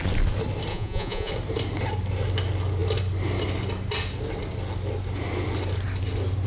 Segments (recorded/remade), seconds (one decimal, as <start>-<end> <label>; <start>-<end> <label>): 0.0-0.7 recorded; 0.7-1.3 remade; 1.3-6.5 recorded